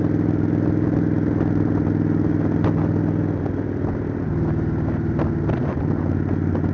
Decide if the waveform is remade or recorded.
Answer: recorded